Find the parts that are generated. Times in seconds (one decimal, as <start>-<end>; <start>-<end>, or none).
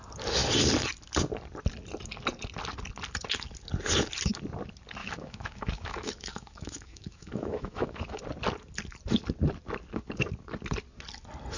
5.0-8.2